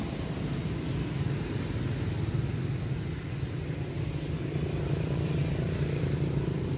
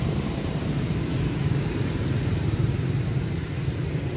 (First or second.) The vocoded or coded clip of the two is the second